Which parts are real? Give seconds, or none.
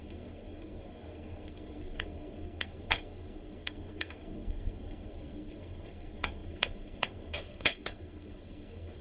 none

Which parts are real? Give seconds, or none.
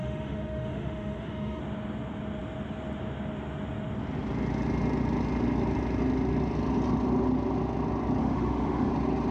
1.6-8.2; 8.9-9.3